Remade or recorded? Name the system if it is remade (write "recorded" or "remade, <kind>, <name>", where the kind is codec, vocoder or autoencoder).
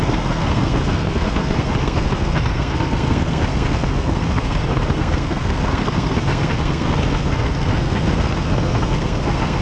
remade, codec, SNAC